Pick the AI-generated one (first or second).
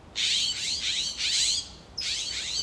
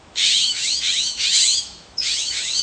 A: second